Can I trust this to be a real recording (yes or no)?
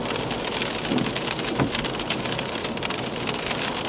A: yes